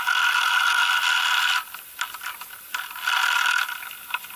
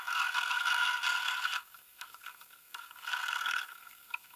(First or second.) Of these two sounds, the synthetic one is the second